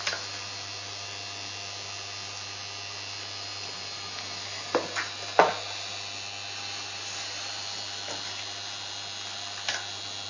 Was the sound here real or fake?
real